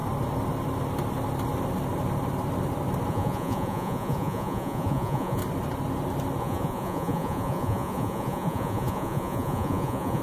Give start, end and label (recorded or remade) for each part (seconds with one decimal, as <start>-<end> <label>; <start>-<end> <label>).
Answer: 0.0-3.1 recorded; 3.1-5.4 remade; 5.4-6.4 recorded; 6.4-10.2 remade